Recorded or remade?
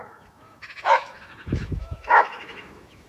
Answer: remade